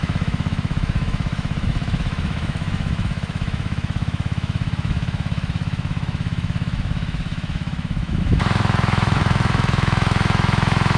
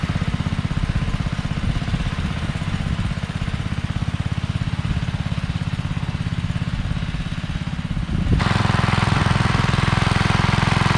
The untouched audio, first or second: second